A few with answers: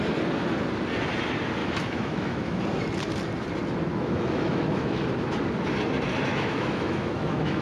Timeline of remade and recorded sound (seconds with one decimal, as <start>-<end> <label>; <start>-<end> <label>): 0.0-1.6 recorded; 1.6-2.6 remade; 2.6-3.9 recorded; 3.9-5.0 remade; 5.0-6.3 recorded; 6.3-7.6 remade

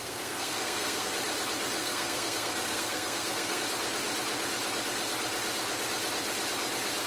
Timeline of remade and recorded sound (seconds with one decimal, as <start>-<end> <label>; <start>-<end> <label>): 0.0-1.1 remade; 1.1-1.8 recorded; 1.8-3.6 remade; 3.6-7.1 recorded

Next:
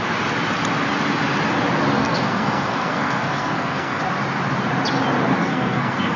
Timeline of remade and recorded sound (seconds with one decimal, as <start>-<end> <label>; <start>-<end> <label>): 0.0-2.0 recorded; 2.0-4.0 remade; 4.0-5.4 recorded; 5.4-6.2 remade